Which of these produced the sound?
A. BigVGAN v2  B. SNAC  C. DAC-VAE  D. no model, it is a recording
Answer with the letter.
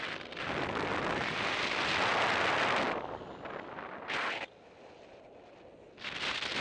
D